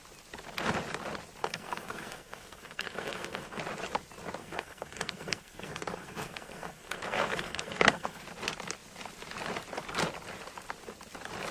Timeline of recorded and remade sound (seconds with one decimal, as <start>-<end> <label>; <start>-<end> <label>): 0.0-1.4 recorded; 1.4-3.6 remade; 3.6-4.4 recorded; 4.4-8.2 remade; 8.2-11.5 recorded